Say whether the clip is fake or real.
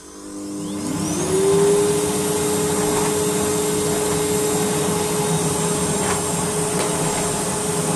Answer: real